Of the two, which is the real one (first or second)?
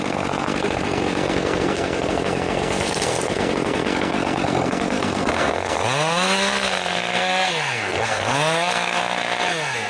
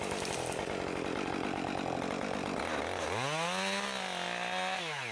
second